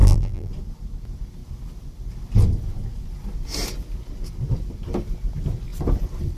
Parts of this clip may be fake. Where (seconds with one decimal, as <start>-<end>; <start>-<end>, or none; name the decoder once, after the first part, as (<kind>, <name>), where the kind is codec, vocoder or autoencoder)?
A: 0.0-0.5 (vocoder, BigVGAN v2)